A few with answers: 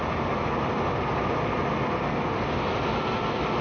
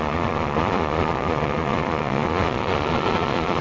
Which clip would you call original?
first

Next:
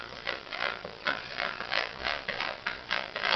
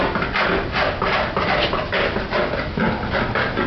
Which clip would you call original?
second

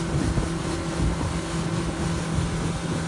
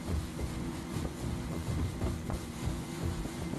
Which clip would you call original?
first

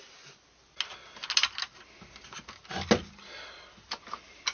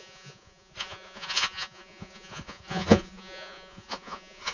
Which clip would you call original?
first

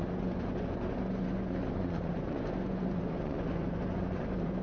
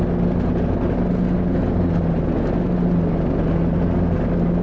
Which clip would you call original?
second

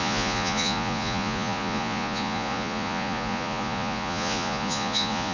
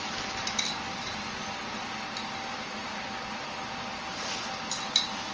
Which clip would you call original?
second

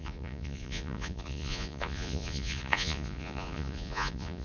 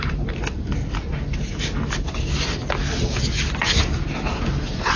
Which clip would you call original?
second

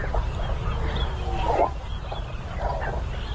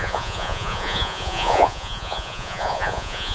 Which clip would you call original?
first